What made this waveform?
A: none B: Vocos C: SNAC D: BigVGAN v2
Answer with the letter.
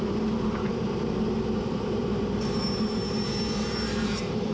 D